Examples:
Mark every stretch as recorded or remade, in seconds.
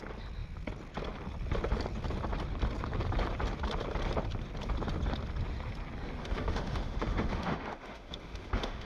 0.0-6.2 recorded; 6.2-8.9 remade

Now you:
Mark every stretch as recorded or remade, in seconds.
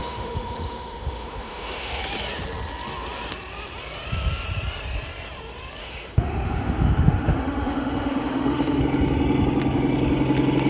0.0-2.0 remade; 2.0-5.8 recorded; 5.8-8.8 remade; 8.8-10.7 recorded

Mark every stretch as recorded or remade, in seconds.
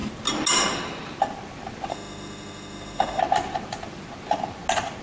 0.0-1.9 recorded; 1.9-3.2 remade; 3.2-5.0 recorded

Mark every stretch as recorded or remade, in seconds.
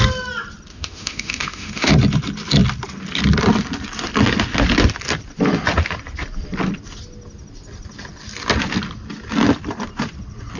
0.0-0.7 recorded; 0.7-1.9 remade; 1.9-10.6 recorded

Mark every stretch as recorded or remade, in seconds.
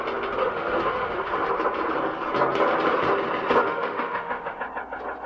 0.0-0.4 recorded; 0.4-1.5 remade; 1.5-3.6 recorded; 3.6-4.6 remade; 4.6-5.3 recorded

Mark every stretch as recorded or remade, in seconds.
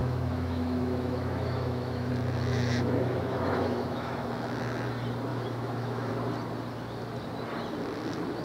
0.0-2.1 remade; 2.1-2.5 recorded; 2.5-4.3 remade; 4.3-5.3 recorded; 5.3-6.1 remade; 6.1-8.4 recorded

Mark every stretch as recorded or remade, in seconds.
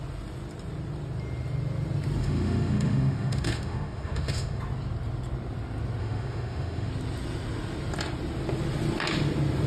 0.0-2.2 recorded; 2.2-4.6 remade; 4.6-6.0 recorded; 6.0-6.9 remade; 6.9-9.7 recorded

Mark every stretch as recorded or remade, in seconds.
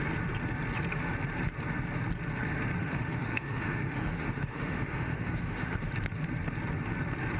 0.0-2.8 recorded; 2.8-5.9 remade; 5.9-7.4 recorded